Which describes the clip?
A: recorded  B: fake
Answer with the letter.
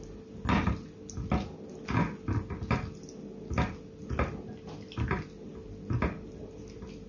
A